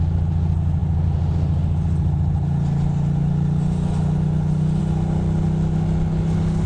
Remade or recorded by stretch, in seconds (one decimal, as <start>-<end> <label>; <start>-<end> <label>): 0.0-6.7 recorded